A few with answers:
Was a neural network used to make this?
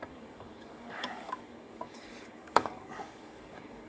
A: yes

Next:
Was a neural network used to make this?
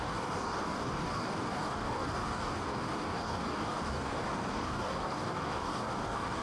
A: yes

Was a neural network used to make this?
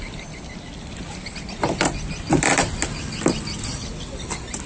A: no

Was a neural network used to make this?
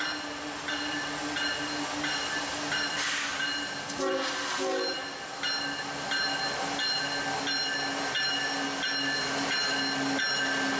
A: no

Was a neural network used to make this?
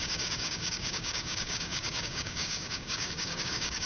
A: yes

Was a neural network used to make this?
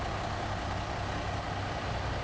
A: no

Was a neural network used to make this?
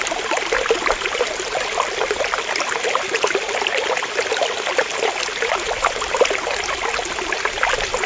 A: no